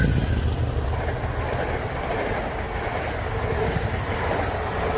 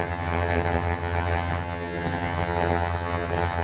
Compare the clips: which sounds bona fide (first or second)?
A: first